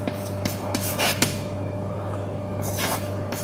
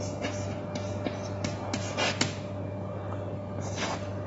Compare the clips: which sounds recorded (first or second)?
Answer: second